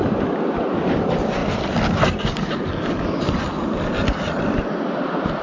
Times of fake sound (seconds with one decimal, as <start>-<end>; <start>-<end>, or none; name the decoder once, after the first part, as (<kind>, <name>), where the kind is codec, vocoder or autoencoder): 0.0-1.4 (vocoder, BigVGAN v2); 4.6-5.4